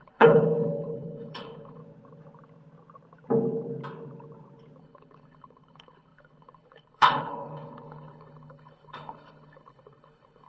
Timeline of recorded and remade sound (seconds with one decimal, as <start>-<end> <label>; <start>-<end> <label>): 0.0-1.8 remade; 1.8-4.8 recorded; 4.8-10.5 remade